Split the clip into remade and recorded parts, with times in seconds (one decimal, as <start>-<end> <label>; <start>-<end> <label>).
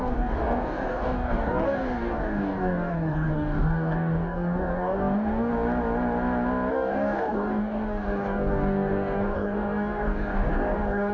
0.0-5.5 remade; 5.5-6.7 recorded; 6.7-11.1 remade